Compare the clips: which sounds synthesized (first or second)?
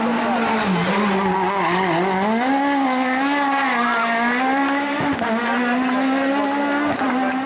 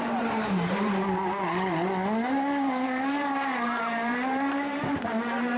second